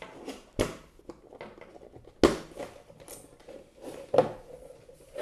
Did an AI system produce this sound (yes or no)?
no